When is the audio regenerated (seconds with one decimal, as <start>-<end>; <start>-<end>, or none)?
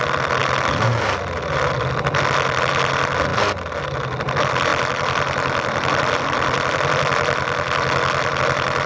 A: 0.4-1.9; 4.7-8.4